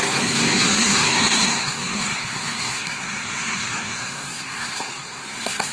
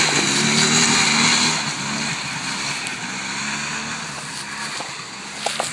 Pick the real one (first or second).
second